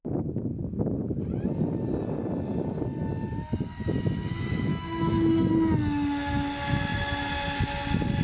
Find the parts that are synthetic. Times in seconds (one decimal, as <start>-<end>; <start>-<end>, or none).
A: 4.7-5.5